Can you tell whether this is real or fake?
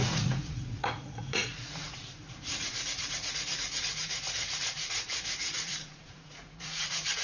fake